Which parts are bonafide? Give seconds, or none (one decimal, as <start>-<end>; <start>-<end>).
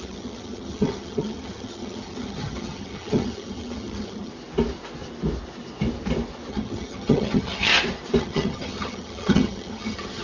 4.3-6.5; 7.7-8.2